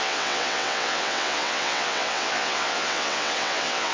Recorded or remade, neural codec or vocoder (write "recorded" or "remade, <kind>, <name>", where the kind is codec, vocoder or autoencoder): remade, vocoder, WaveNeXt